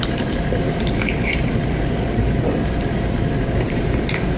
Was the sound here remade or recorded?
remade